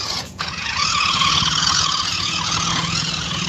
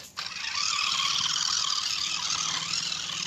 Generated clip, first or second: first